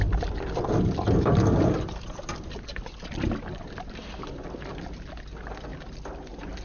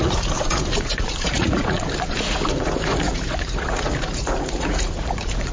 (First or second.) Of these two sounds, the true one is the first